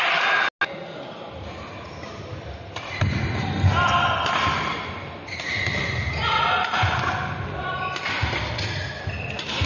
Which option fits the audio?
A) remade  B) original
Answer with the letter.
B